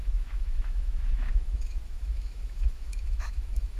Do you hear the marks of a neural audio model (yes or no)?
yes